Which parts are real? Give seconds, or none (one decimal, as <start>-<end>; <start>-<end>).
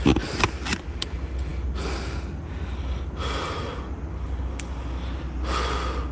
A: 0.0-6.1